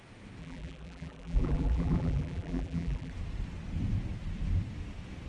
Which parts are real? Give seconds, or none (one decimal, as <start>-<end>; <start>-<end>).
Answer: 0.0-0.4; 3.1-5.3